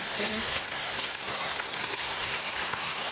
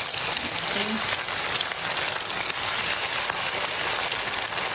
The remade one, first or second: first